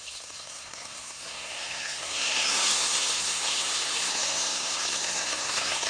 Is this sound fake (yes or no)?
yes